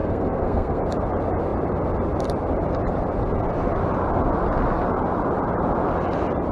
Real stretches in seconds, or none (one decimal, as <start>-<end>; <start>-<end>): 0.8-6.5